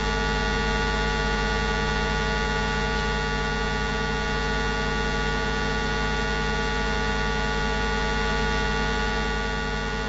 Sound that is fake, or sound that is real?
real